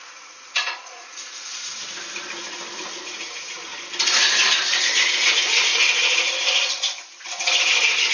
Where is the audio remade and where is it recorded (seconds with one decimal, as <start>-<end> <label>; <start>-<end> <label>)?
0.0-1.7 remade; 1.7-2.7 recorded; 2.7-3.7 remade; 3.7-5.1 recorded; 5.1-5.7 remade; 5.7-8.1 recorded